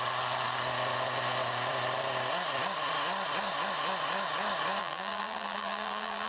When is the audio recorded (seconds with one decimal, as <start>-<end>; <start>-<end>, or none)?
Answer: 0.0-4.8